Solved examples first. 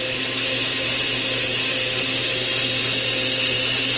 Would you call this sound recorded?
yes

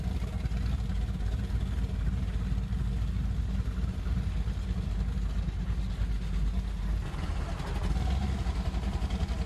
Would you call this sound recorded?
yes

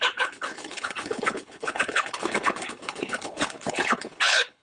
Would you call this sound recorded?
no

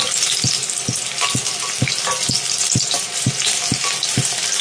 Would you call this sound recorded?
yes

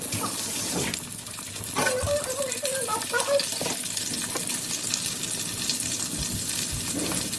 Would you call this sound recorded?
yes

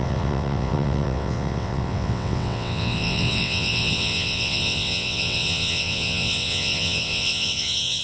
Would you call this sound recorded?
no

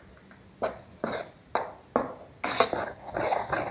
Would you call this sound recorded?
yes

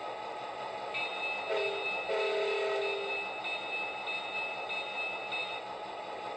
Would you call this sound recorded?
yes